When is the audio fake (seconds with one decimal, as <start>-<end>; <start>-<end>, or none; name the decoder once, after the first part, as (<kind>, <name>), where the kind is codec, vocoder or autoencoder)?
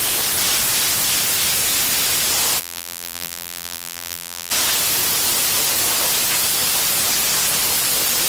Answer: 2.6-4.5 (vocoder, BigVGAN v2)